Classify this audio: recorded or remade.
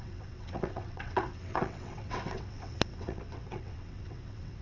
remade